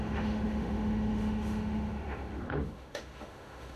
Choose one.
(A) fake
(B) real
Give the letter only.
A